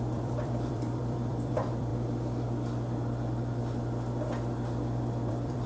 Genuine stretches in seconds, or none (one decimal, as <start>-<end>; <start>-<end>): 1.9-5.3